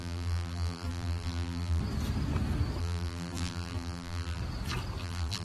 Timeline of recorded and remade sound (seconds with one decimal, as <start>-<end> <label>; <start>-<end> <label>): 0.0-1.8 remade; 1.8-2.8 recorded; 2.8-4.4 remade; 4.4-5.0 recorded; 5.0-5.4 remade